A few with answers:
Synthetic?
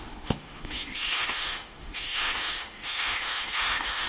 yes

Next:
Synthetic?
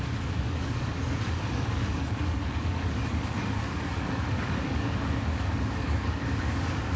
yes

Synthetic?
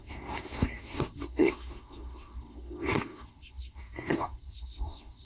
yes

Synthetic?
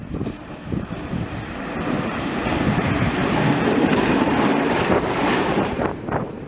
yes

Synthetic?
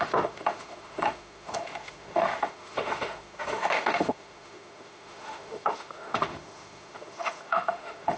yes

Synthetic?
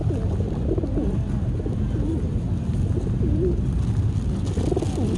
no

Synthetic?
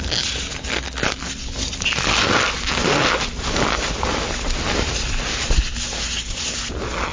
no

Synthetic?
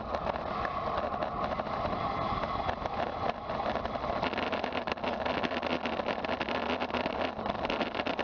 no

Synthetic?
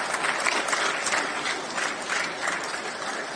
no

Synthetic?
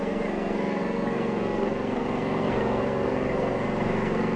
yes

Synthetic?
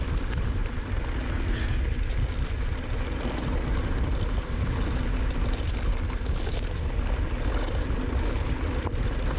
no